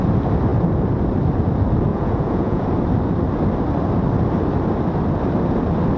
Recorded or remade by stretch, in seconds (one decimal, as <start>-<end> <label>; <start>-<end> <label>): 0.0-1.9 recorded; 1.9-2.7 remade; 2.7-6.0 recorded